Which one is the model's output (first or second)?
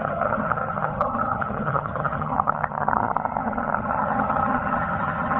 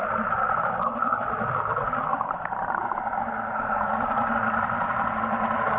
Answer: first